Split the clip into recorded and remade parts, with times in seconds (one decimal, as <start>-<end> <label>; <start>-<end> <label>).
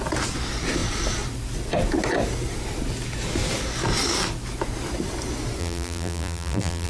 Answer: 0.0-5.6 recorded; 5.6-6.9 remade